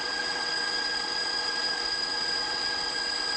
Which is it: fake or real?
fake